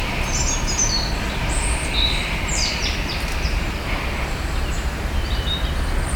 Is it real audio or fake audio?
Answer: fake